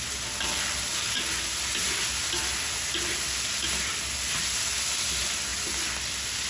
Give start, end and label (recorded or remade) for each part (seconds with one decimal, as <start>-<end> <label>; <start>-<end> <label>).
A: 0.0-6.5 recorded